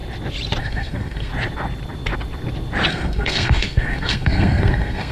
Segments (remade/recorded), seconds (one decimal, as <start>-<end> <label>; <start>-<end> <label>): 0.0-0.6 recorded; 0.6-1.3 remade; 1.3-2.9 recorded; 2.9-5.1 remade